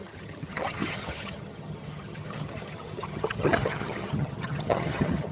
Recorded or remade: remade